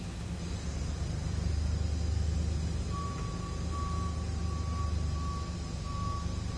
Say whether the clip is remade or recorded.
recorded